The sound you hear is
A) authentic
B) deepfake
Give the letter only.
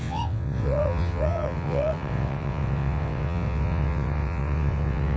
B